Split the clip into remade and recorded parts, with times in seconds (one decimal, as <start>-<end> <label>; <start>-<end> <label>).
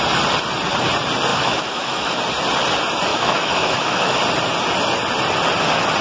0.0-1.3 recorded; 1.3-2.2 remade; 2.2-3.1 recorded; 3.1-4.2 remade; 4.2-6.0 recorded